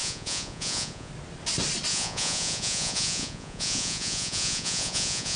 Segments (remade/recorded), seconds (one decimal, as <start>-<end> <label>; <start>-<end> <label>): 0.0-1.1 remade; 1.1-1.9 recorded; 1.9-5.4 remade